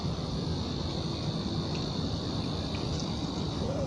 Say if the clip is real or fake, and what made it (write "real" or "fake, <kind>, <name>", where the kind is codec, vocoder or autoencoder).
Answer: real